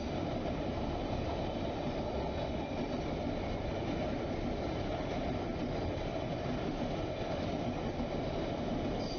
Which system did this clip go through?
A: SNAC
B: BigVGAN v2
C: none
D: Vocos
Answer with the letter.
C